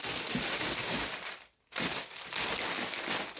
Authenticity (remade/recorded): recorded